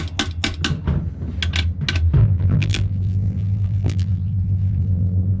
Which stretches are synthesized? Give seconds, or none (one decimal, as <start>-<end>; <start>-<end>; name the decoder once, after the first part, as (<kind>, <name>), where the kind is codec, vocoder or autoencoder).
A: 2.2-5.4 (vocoder, BigVGAN v2)

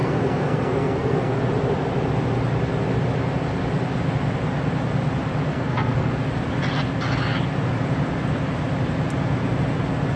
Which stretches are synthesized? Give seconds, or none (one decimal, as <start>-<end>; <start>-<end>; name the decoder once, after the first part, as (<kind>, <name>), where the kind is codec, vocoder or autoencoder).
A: 0.0-1.4 (codec, SNAC); 5.5-6.1

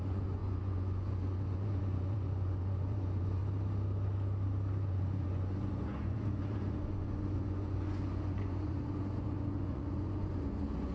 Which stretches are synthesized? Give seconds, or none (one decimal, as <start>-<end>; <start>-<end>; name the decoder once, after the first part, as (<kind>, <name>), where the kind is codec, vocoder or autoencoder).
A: 0.0-3.4 (vocoder, Vocos); 4.9-10.9